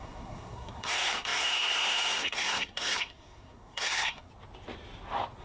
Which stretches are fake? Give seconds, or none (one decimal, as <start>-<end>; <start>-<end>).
0.0-4.3